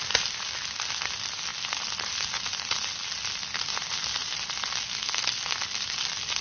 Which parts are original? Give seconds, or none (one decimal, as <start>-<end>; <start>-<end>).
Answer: 0.0-6.4